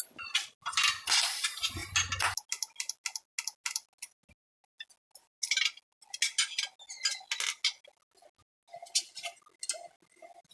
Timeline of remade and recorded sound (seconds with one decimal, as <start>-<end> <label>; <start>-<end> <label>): 0.0-10.5 recorded